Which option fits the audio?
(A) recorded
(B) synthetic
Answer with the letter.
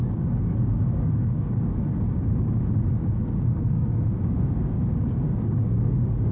B